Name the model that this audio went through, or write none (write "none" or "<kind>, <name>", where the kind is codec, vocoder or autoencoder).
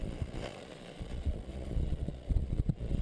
vocoder, Vocos